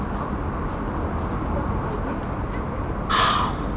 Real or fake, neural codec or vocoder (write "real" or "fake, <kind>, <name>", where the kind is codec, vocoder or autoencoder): real